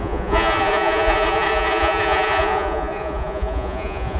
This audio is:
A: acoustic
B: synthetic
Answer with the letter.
B